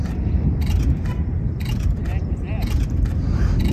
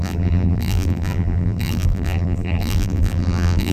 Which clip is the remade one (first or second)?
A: second